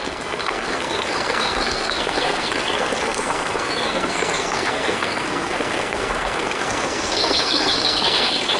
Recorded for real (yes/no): no